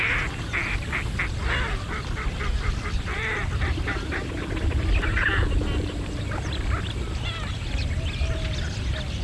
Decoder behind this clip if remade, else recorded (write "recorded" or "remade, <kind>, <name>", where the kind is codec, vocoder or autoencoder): recorded